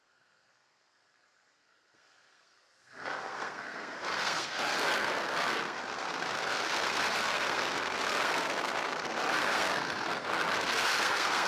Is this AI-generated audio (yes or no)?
yes